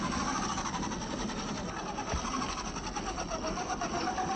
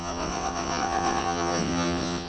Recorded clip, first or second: first